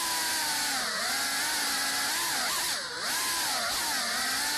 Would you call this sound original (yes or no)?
yes